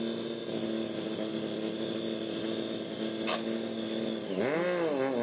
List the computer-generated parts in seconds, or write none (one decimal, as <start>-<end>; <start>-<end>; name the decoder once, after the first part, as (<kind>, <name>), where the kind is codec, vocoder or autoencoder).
none